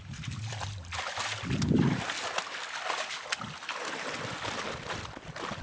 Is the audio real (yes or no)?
yes